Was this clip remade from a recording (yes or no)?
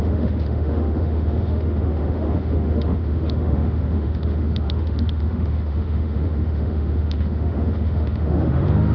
yes